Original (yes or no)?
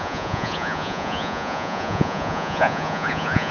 no